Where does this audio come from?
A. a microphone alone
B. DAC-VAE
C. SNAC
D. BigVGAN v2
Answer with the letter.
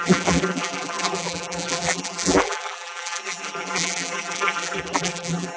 D